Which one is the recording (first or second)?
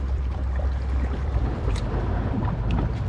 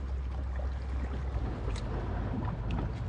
second